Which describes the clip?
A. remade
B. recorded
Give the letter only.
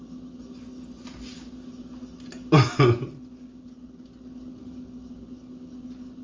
B